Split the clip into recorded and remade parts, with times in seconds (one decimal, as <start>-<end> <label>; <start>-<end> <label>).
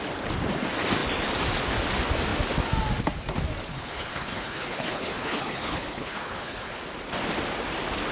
0.0-3.7 recorded; 3.7-6.8 remade; 6.8-8.1 recorded